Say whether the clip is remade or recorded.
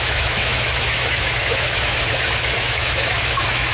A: remade